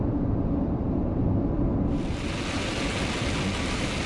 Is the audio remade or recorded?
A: recorded